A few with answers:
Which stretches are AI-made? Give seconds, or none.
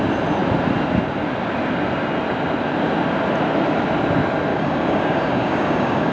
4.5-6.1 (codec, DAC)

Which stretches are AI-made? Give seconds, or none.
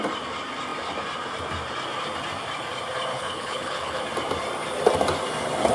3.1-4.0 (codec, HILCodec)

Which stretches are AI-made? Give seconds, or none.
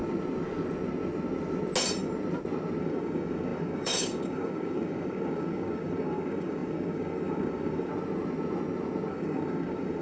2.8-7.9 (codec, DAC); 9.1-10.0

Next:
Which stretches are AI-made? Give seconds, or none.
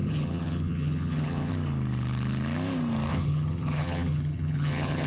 0.0-1.5 (vocoder, HiFi-GAN); 3.1-5.1